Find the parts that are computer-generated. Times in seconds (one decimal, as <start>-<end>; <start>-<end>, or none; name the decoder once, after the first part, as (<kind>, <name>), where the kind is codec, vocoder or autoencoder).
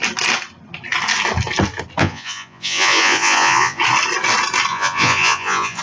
2.0-3.8 (vocoder, Vocos); 4.7-5.8